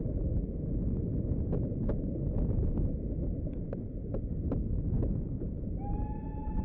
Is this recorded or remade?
recorded